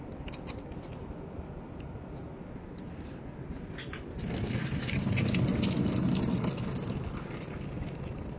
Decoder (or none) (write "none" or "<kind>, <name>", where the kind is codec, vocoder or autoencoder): none